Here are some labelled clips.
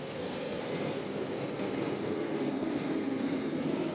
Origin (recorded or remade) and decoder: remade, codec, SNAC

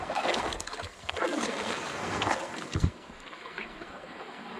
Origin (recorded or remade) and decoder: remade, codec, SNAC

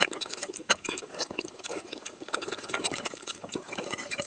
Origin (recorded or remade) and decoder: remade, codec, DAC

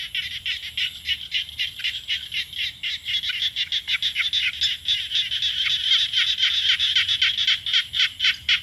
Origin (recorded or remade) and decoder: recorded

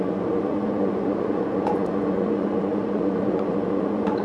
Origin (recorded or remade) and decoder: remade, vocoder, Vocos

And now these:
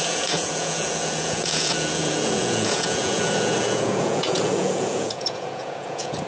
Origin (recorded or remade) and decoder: remade, vocoder, Vocos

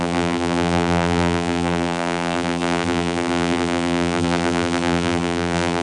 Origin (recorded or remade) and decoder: remade, vocoder, BigVGAN v2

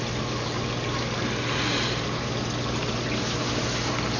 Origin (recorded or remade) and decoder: recorded